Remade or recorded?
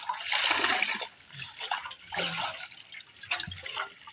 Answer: recorded